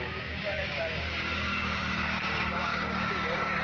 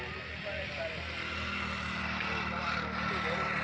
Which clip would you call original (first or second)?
second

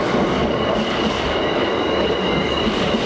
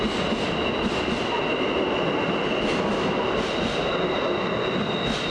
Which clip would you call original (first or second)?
second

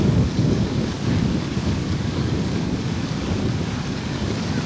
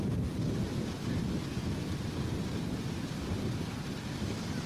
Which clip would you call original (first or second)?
second